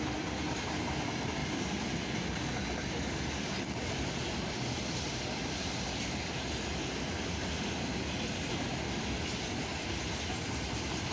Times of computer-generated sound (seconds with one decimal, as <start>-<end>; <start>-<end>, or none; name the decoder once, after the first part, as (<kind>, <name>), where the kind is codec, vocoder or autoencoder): none